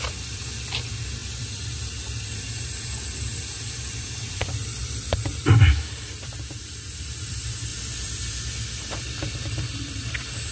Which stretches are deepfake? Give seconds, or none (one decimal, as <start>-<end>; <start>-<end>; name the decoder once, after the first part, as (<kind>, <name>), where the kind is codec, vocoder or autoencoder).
0.0-7.7 (vocoder, BigVGAN v2); 8.8-10.5